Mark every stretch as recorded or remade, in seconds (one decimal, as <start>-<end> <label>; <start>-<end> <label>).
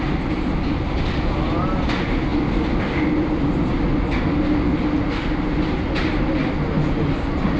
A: 0.0-7.6 recorded